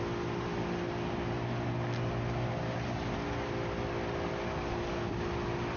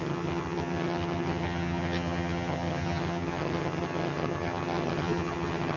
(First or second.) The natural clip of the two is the first